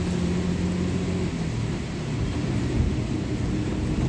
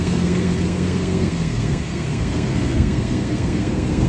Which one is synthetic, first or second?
second